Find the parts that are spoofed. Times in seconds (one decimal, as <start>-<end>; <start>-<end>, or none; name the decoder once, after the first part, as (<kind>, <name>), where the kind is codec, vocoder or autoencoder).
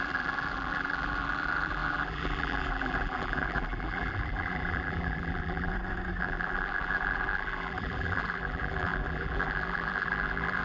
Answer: 0.0-5.7 (vocoder, BigVGAN v2); 6.2-10.6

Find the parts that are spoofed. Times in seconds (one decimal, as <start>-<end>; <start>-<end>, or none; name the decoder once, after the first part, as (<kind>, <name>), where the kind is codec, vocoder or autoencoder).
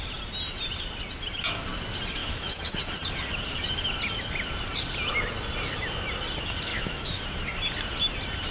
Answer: 2.2-2.8 (autoencoder, DAC-VAE); 6.7-7.2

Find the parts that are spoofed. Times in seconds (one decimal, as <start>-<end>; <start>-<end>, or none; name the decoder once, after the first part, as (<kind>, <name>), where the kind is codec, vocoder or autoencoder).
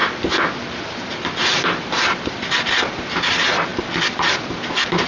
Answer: 0.0-3.1 (vocoder, BigVGAN v2); 3.7-4.5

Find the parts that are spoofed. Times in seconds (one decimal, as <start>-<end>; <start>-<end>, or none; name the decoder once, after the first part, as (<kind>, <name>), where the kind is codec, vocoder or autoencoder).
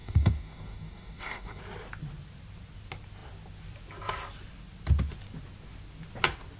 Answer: 0.0-1.6 (codec, DAC)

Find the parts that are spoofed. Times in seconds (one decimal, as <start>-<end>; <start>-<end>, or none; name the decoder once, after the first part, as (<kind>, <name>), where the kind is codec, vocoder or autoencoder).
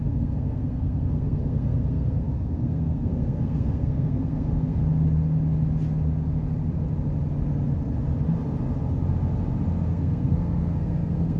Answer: 0.0-4.8 (codec, SNAC); 9.9-11.4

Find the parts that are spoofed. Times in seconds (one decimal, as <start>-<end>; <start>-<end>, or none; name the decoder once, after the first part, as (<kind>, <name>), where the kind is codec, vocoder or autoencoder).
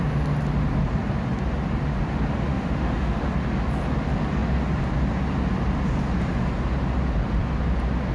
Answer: 2.5-3.2 (autoencoder, DAC-VAE)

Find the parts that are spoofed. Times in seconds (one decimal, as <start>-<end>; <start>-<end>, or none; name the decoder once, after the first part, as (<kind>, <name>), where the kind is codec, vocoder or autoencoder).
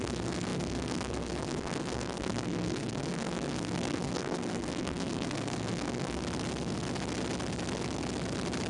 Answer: 0.0-6.2 (codec, SNAC)